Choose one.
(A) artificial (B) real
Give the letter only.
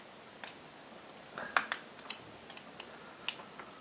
B